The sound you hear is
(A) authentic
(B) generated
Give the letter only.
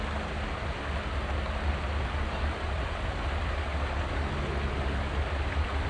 A